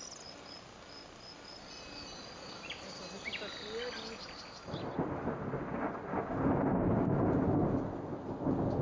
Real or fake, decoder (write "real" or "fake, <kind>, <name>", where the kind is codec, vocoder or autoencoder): real